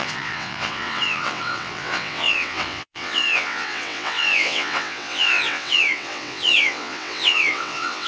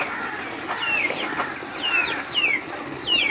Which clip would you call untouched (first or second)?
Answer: second